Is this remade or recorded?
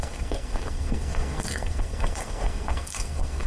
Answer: remade